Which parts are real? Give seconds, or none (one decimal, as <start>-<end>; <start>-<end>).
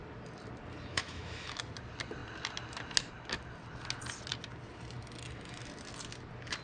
0.0-0.9; 1.6-6.6